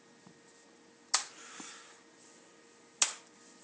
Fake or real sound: real